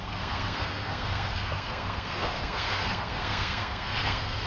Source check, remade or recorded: remade